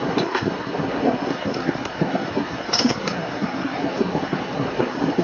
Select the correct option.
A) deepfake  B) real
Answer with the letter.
A